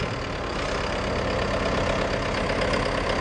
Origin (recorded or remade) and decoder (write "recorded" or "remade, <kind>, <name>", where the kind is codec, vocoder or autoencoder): recorded